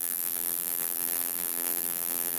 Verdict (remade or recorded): remade